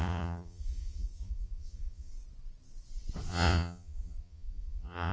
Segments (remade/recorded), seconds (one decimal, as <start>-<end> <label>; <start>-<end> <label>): 0.0-2.1 remade; 2.1-3.3 recorded; 3.3-5.1 remade